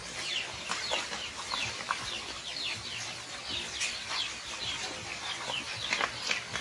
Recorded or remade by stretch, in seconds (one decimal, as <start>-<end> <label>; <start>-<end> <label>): 0.0-2.5 remade; 2.5-6.6 recorded